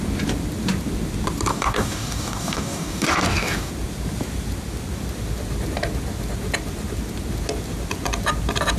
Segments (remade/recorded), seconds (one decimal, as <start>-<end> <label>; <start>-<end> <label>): 0.0-1.5 recorded; 1.5-3.7 remade; 3.7-8.8 recorded